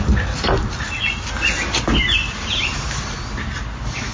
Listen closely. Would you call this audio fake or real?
real